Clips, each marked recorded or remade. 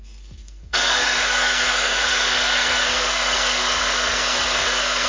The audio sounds remade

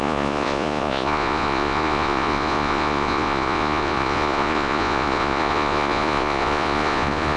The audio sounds remade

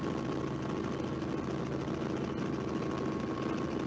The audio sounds recorded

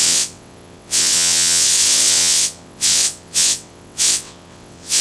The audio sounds remade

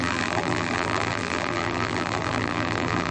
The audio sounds remade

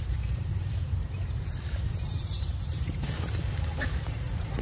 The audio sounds remade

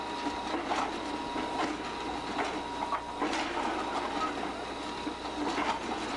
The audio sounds recorded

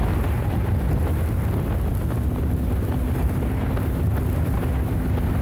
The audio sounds recorded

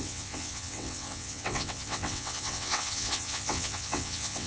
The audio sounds remade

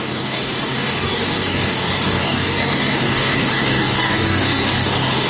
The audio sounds remade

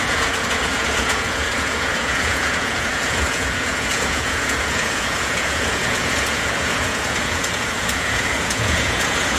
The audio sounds remade